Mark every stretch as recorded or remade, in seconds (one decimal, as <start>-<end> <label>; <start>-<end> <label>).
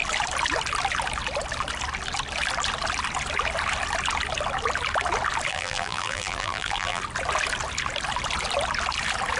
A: 0.0-5.5 recorded; 5.5-7.0 remade; 7.0-9.4 recorded